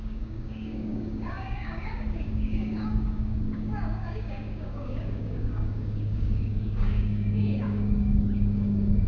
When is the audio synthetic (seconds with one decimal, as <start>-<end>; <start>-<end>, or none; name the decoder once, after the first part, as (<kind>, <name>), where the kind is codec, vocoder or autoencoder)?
0.0-9.1 (codec, DAC)